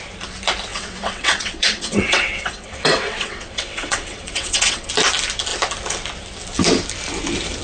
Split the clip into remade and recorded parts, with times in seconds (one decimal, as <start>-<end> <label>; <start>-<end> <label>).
0.0-0.7 recorded; 0.7-4.9 remade; 4.9-7.6 recorded